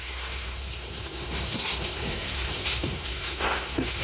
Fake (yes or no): yes